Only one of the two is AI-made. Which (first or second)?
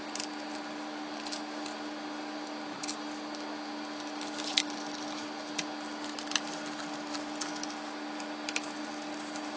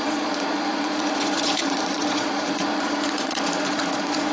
second